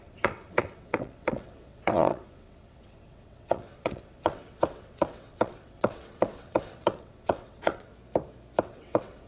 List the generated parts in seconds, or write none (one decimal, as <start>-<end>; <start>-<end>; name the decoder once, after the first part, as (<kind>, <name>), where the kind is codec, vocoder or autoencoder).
0.0-7.9 (vocoder, WaveNeXt); 8.6-9.3